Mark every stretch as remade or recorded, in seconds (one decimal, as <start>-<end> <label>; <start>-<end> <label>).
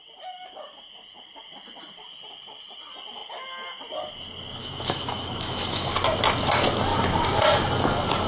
0.0-4.6 recorded; 4.6-5.9 remade; 5.9-8.3 recorded